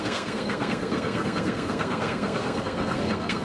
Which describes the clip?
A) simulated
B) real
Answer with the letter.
A